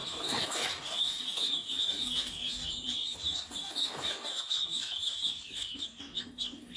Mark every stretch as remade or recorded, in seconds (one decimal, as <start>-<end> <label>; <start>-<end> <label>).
0.0-6.8 remade